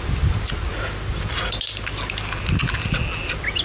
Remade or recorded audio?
recorded